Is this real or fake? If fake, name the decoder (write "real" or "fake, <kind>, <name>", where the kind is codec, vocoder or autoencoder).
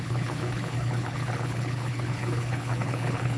fake, codec, HILCodec